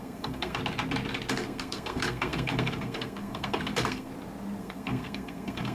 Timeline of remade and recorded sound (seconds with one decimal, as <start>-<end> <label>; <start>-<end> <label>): 0.0-0.6 remade; 0.6-1.3 recorded; 1.3-4.1 remade; 4.1-4.6 recorded; 4.6-5.7 remade